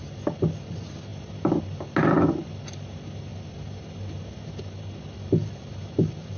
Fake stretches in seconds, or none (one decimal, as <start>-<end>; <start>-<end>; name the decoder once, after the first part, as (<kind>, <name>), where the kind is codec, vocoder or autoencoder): none